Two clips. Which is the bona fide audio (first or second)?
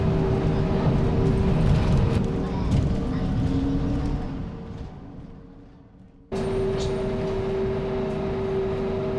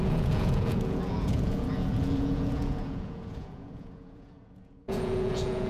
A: first